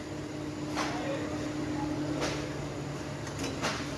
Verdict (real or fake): real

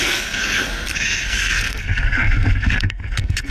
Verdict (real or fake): fake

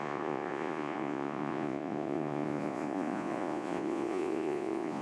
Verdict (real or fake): fake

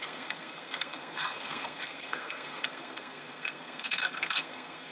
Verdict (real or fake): fake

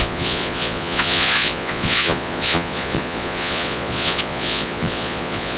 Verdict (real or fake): fake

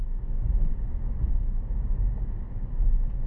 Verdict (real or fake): real